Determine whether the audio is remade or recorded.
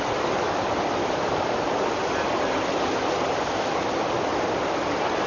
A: recorded